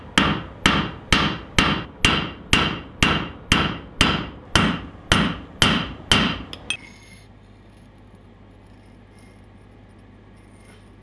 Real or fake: real